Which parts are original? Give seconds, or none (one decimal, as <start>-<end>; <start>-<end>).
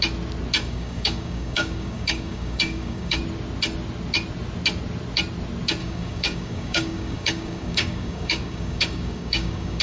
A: 0.0-0.6; 3.2-5.8